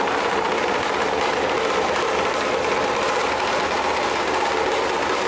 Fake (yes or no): no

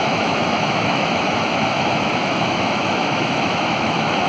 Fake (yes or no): yes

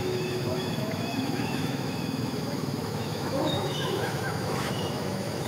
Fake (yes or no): yes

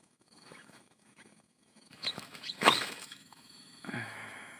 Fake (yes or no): yes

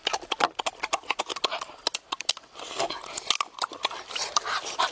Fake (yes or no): no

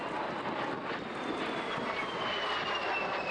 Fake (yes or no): no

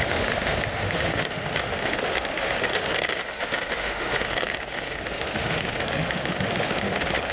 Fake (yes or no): yes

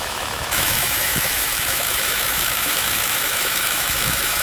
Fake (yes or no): yes